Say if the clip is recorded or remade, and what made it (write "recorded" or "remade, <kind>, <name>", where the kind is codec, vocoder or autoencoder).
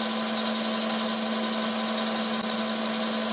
recorded